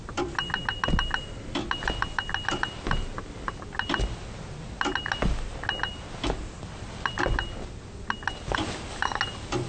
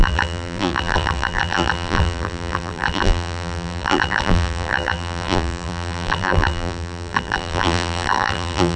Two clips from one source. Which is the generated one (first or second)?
second